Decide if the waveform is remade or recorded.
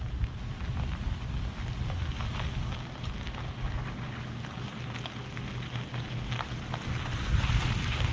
recorded